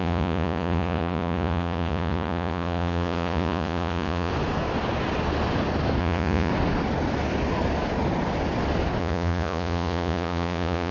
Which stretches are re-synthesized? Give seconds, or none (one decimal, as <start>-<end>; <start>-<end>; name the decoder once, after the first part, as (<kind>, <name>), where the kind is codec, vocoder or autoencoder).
0.0-4.3 (vocoder, Vocos); 6.0-6.5; 9.0-10.9